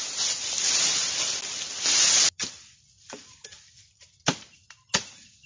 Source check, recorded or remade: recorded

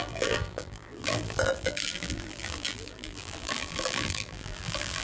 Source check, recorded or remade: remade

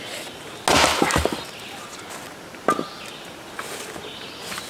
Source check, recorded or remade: recorded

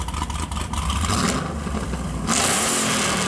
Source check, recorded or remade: recorded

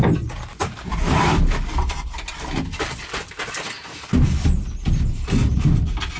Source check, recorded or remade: recorded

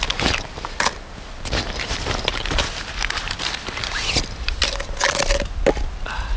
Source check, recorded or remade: recorded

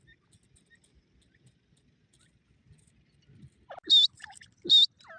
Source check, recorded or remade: recorded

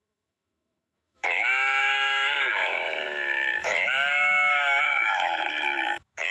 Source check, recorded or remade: remade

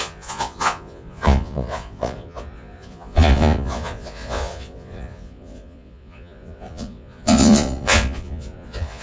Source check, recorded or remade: remade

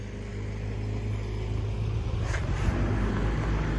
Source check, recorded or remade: recorded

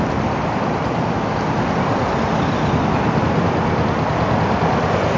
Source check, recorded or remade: recorded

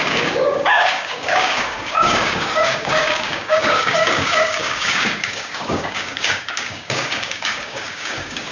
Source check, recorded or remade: remade